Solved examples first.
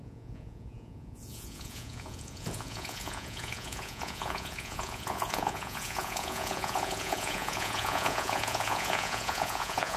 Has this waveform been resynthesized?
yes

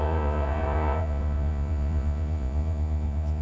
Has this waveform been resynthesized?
yes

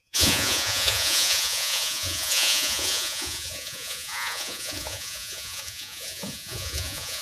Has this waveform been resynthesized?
yes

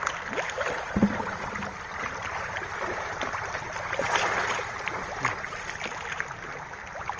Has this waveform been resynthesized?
no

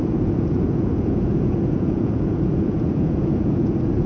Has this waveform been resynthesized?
yes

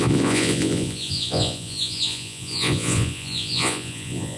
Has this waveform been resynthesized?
yes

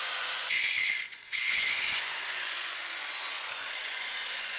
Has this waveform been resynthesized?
yes